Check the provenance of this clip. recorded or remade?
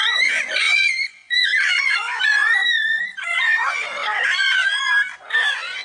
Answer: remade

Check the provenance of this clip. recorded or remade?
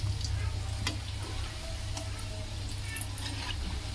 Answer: recorded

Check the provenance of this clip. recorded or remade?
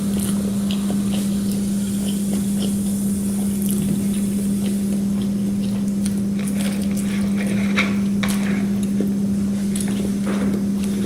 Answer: recorded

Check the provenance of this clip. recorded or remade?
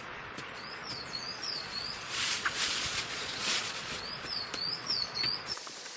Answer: remade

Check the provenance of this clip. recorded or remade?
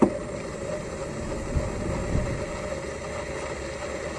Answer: recorded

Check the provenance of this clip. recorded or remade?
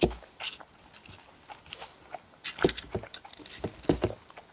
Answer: recorded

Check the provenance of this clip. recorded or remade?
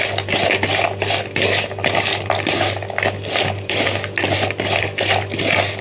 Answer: recorded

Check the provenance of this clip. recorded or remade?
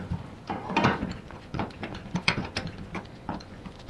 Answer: remade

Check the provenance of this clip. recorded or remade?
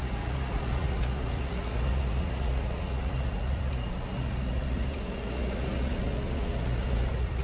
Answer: remade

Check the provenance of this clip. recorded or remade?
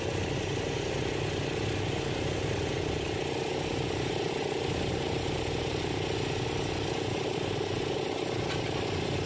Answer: recorded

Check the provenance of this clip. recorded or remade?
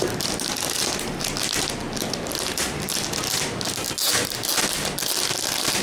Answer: recorded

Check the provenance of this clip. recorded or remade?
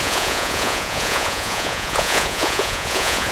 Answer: remade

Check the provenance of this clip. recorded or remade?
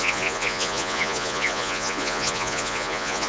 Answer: remade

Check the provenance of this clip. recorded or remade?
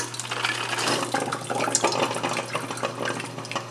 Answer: recorded